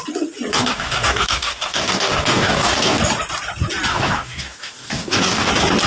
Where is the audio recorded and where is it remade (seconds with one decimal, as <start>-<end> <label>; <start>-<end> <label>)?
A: 0.0-0.5 recorded; 0.5-3.0 remade; 3.0-3.9 recorded; 3.9-5.5 remade; 5.5-5.9 recorded